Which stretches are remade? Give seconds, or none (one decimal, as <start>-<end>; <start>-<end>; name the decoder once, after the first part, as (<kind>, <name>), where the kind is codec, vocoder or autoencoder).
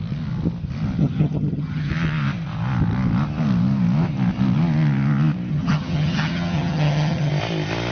1.0-1.9 (vocoder, HiFi-GAN); 5.5-7.3